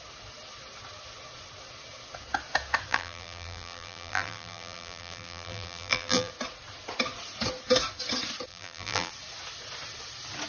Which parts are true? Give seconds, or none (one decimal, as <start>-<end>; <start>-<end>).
0.0-2.9; 6.3-8.5; 9.1-10.5